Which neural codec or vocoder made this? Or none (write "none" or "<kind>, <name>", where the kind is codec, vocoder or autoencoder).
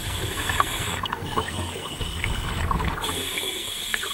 codec, SNAC